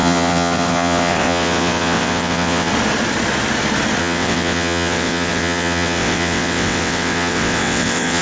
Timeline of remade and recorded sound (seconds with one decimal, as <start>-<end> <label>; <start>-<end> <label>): 0.0-2.7 remade; 2.7-4.0 recorded; 4.0-8.2 remade

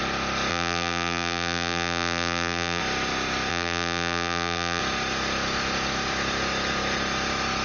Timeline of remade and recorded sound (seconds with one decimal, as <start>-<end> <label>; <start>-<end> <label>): 0.0-0.5 recorded; 0.5-2.8 remade; 2.8-3.5 recorded; 3.5-4.8 remade; 4.8-7.6 recorded

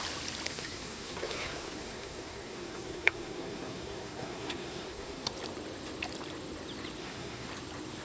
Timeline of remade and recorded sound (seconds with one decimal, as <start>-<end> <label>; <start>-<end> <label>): 0.0-0.5 recorded; 0.5-5.3 remade; 5.3-7.0 recorded; 7.0-7.5 remade; 7.5-8.0 recorded